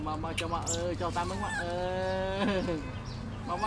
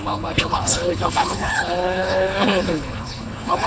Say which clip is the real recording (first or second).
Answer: first